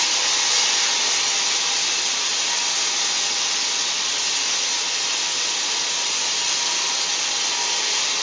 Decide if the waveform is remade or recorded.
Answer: recorded